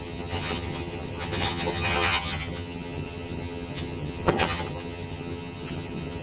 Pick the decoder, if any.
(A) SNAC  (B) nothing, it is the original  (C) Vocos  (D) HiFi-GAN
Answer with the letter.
D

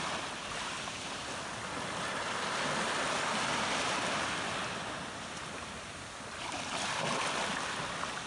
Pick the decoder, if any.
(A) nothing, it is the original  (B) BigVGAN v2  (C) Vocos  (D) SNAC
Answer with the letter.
A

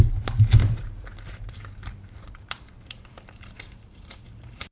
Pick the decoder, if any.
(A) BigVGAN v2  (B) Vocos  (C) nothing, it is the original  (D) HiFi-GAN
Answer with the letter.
A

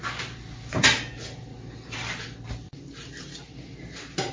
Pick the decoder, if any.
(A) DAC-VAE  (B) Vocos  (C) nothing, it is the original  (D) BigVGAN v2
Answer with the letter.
C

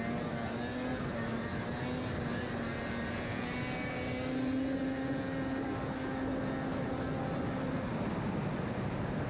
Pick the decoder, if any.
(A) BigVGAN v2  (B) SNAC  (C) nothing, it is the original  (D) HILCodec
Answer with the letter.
C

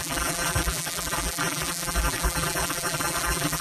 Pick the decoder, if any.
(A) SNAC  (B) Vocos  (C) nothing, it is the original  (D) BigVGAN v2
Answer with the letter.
D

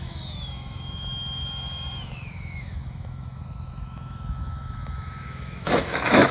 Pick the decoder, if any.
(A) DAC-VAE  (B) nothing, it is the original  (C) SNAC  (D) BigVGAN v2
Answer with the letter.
A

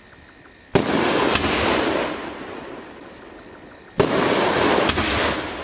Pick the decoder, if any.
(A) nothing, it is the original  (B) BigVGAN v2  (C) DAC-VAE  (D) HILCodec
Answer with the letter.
A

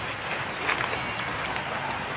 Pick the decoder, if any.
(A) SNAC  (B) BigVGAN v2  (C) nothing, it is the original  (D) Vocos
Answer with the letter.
C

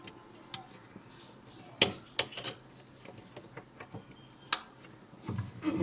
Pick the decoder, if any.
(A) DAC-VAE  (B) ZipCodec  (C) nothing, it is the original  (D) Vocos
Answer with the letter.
C